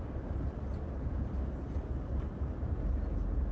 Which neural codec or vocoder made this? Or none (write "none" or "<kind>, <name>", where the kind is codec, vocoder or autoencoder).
none